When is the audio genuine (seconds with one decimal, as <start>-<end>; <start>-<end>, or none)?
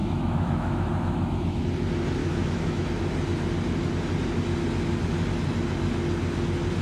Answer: 1.6-2.2; 2.9-6.8